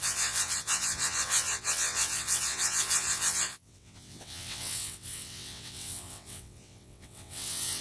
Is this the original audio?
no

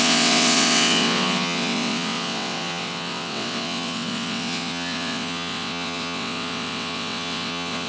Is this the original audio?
no